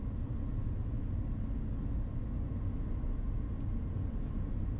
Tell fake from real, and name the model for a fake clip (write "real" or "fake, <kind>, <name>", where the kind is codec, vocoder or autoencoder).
real